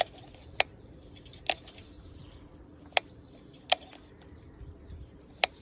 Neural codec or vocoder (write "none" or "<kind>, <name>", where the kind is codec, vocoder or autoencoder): none